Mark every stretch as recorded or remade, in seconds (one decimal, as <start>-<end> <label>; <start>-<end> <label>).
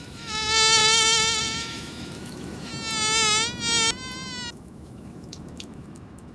0.0-2.7 remade; 2.7-4.5 recorded; 4.5-6.3 remade